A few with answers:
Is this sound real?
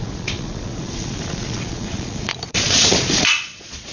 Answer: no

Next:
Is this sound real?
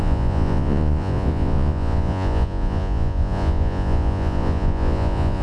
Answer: no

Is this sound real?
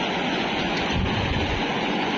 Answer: no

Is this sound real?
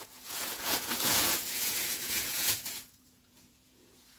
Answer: no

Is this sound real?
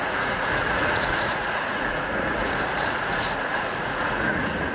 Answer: no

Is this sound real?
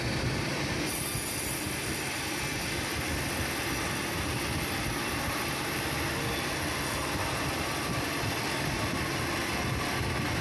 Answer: yes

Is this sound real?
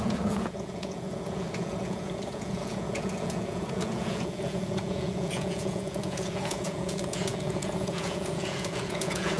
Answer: no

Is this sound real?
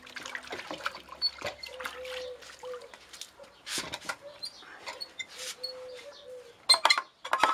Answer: yes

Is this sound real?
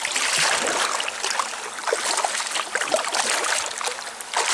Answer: yes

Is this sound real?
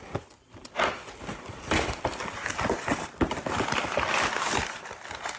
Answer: yes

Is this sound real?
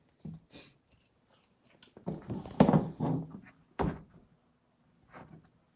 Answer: yes